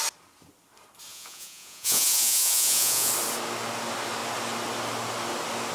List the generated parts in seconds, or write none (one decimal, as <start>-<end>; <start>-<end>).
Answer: 1.1-3.1